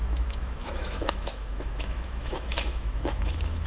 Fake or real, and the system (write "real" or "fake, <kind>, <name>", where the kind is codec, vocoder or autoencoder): fake, autoencoder, DAC-VAE